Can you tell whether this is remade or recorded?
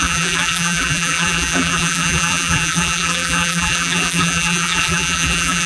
remade